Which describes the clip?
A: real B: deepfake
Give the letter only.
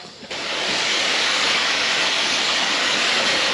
B